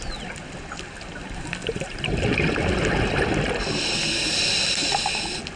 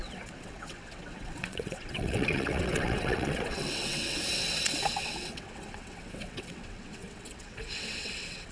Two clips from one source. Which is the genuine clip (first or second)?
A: first